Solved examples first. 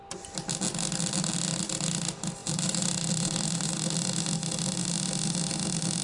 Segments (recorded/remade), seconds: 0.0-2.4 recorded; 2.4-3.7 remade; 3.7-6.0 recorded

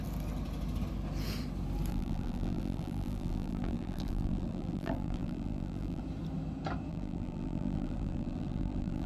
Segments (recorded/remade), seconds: 0.0-1.9 recorded; 1.9-6.0 remade; 6.0-6.9 recorded; 6.9-9.1 remade

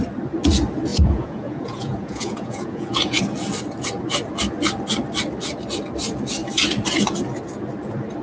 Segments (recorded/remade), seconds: 0.0-0.9 recorded; 0.9-3.2 remade; 3.2-8.2 recorded

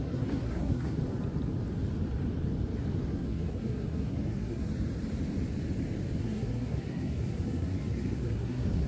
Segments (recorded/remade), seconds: 0.0-1.0 remade; 1.0-3.1 recorded; 3.1-4.7 remade; 4.7-6.2 recorded; 6.2-8.9 remade

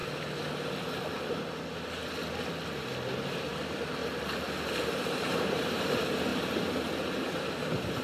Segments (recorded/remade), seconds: 0.0-3.3 recorded; 3.3-4.0 remade; 4.0-4.7 recorded; 4.7-6.3 remade; 6.3-7.0 recorded; 7.0-8.0 remade

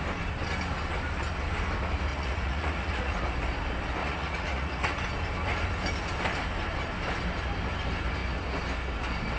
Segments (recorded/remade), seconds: 0.0-2.1 recorded; 2.1-3.2 remade; 3.2-4.0 recorded; 4.0-5.0 remade; 5.0-9.4 recorded

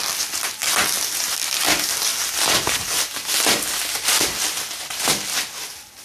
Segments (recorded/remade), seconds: 0.0-6.0 recorded

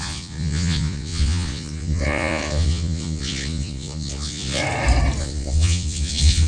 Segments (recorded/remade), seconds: 0.0-4.6 remade; 4.6-5.2 recorded; 5.2-6.5 remade